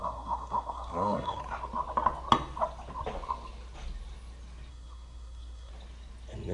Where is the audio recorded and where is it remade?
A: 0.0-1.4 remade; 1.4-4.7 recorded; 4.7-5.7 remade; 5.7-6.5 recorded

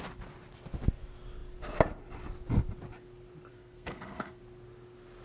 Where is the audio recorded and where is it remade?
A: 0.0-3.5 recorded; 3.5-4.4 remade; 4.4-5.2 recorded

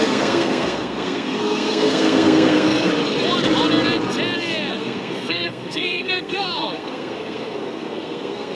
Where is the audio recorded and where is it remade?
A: 0.0-2.9 remade; 2.9-4.7 recorded; 4.7-8.5 remade

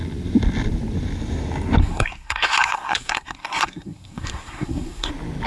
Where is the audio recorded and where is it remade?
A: 0.0-1.8 recorded; 1.8-5.1 remade; 5.1-5.5 recorded

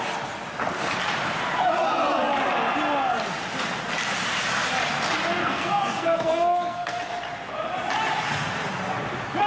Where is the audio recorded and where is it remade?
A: 0.0-5.4 recorded; 5.4-7.0 remade; 7.0-9.5 recorded

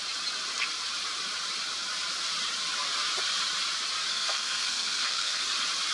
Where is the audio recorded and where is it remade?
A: 0.0-4.1 recorded; 4.1-5.4 remade; 5.4-5.9 recorded